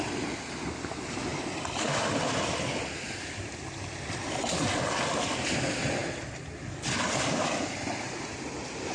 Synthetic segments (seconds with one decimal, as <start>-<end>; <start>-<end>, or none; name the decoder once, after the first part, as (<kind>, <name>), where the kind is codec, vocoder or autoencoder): none